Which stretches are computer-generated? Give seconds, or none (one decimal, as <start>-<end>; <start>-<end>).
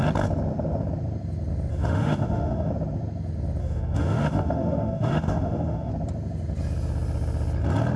1.7-2.7; 3.6-5.9